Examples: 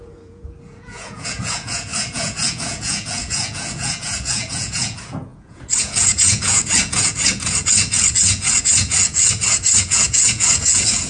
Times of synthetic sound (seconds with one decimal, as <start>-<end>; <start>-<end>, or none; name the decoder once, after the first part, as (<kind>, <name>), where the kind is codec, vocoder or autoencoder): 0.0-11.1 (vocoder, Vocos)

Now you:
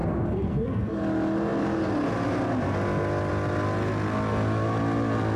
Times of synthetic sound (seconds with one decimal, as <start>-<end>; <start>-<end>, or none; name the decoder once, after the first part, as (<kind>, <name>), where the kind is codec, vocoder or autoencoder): 0.0-1.0 (codec, SNAC)

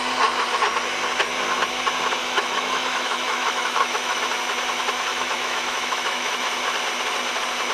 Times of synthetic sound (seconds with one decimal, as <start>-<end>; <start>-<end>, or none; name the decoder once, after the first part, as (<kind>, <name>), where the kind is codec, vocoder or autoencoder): 2.2-4.2 (autoencoder, DAC-VAE); 5.1-6.5

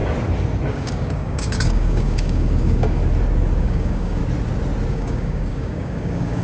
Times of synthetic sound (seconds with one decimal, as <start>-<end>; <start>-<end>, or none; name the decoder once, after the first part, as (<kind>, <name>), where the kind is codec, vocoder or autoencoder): 0.7-3.0 (codec, DAC); 3.6-4.2; 4.9-6.4

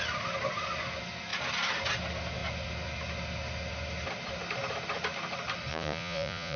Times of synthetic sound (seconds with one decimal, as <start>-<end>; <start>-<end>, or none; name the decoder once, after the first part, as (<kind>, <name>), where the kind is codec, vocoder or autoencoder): 5.7-6.6 (vocoder, Vocos)

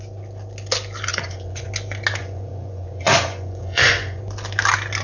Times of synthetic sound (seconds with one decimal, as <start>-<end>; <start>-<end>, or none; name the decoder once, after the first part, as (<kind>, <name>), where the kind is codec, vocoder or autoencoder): 1.1-1.7 (vocoder, Vocos); 2.2-4.2